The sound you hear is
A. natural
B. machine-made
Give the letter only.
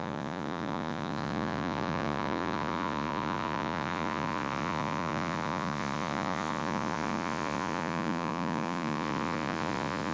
B